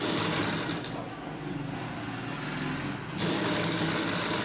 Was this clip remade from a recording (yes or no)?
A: no